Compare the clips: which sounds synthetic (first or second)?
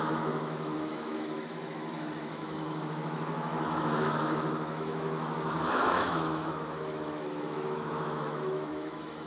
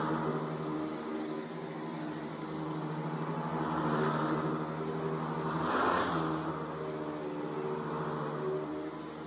first